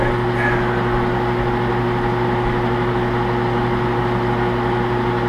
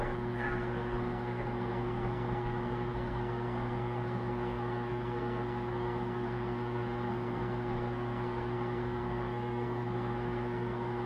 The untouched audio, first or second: first